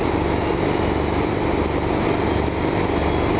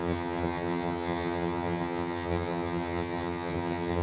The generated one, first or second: second